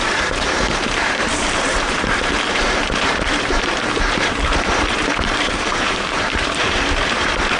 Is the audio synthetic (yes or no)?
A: yes